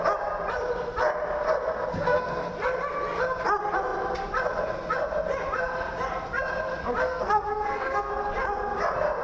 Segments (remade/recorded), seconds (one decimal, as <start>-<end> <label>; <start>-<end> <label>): 0.0-1.9 recorded; 1.9-2.5 remade; 2.5-7.0 recorded; 7.0-8.1 remade; 8.1-9.2 recorded